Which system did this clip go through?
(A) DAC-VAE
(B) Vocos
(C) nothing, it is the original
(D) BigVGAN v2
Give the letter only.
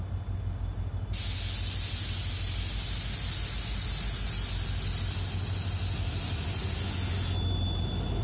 C